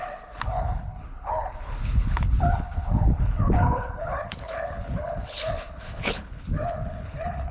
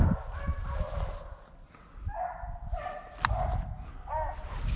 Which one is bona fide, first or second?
second